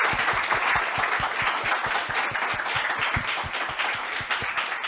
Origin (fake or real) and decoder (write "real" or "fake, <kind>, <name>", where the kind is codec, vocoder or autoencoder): real